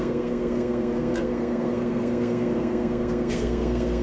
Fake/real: fake